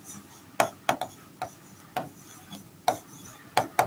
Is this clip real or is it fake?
real